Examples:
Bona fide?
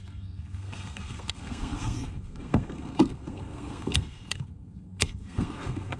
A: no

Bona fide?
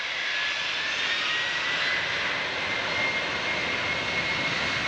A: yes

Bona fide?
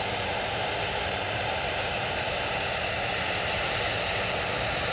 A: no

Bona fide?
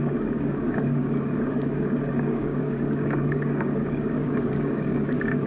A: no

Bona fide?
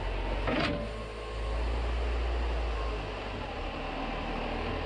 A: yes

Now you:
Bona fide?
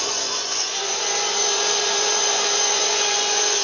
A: no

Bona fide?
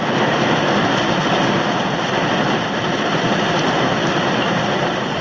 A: no